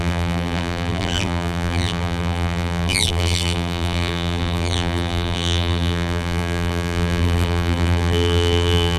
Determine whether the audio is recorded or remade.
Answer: remade